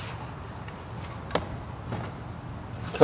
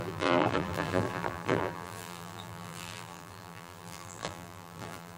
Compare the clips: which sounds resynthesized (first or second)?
second